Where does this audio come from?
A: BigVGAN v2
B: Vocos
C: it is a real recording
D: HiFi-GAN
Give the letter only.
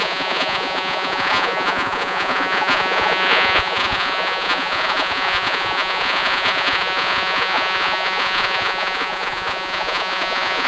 B